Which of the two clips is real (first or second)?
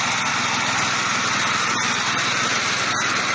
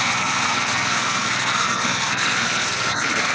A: first